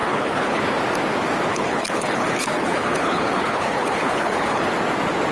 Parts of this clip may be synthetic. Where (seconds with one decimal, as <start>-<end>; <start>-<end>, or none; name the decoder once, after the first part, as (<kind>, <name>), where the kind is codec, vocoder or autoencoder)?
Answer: 0.0-0.6 (codec, HILCodec); 1.5-4.7